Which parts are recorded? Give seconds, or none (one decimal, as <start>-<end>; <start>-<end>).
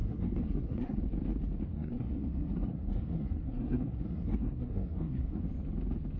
1.0-1.7; 5.4-6.2